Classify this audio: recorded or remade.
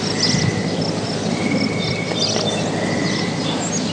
recorded